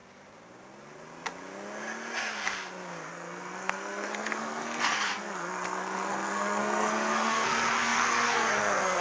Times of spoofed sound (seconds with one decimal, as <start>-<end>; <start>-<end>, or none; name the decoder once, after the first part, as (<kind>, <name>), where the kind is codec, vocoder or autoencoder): 3.1-9.0 (codec, SNAC)